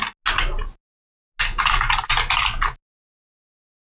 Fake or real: real